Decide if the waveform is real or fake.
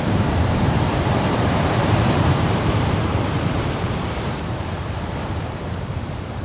fake